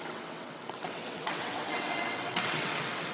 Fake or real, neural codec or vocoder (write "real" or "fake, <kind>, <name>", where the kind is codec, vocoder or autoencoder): fake, vocoder, WaveNeXt